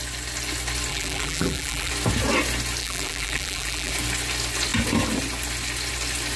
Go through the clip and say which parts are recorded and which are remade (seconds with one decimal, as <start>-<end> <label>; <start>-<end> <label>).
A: 0.0-0.9 recorded; 0.9-1.9 remade; 1.9-2.8 recorded; 2.8-3.9 remade; 3.9-6.4 recorded